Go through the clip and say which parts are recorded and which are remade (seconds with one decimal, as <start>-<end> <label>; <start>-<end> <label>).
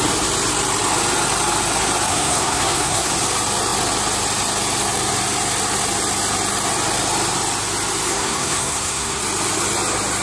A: 0.0-2.1 recorded; 2.1-3.1 remade; 3.1-8.1 recorded; 8.1-9.2 remade; 9.2-10.2 recorded